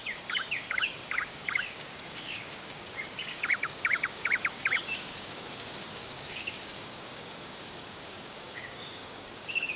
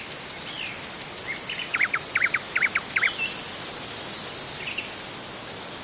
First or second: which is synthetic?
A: first